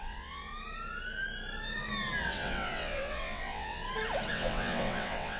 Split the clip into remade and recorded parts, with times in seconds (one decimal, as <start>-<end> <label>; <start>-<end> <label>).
0.0-0.5 remade; 0.5-2.2 recorded; 2.2-3.8 remade; 3.8-4.3 recorded; 4.3-5.4 remade

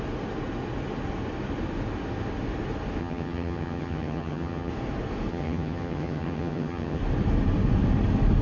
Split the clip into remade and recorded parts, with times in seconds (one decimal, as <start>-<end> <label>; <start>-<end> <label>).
0.0-3.0 recorded; 3.0-4.7 remade; 4.7-5.3 recorded; 5.3-7.0 remade; 7.0-8.4 recorded

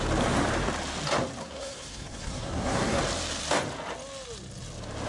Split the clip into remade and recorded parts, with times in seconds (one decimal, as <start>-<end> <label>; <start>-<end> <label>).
0.0-1.4 recorded; 1.4-3.0 remade; 3.0-5.1 recorded

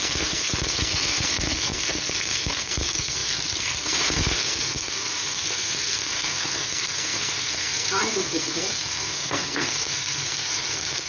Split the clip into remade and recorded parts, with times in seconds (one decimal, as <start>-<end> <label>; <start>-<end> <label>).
0.0-11.1 remade

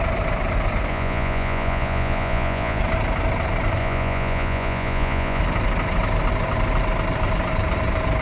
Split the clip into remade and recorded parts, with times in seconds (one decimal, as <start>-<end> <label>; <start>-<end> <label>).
0.0-0.9 recorded; 0.9-2.8 remade; 2.8-3.8 recorded; 3.8-5.4 remade; 5.4-8.2 recorded